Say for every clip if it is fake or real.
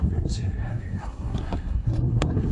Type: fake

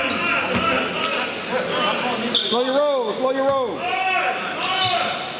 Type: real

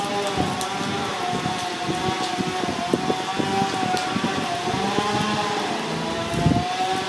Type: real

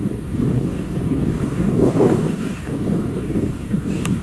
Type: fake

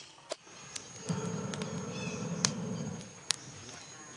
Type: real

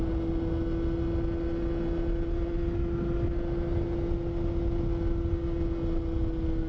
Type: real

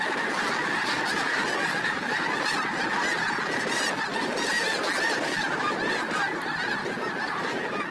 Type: real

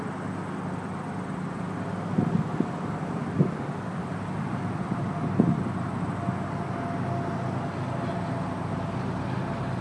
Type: real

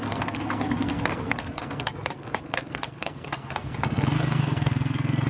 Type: fake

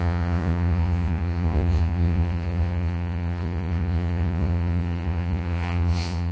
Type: fake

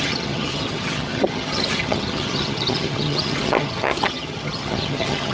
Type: fake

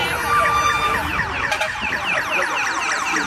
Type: fake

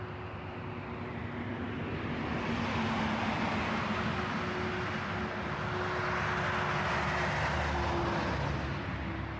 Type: real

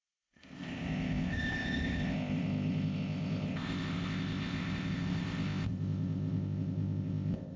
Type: fake